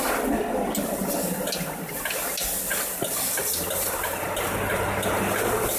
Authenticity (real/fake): real